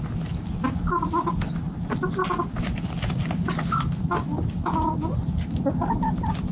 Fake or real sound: real